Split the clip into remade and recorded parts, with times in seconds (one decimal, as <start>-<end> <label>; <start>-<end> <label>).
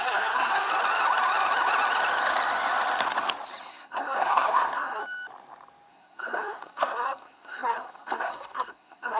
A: 0.0-0.7 remade; 0.7-3.7 recorded; 3.7-5.0 remade; 5.0-5.9 recorded; 5.9-9.2 remade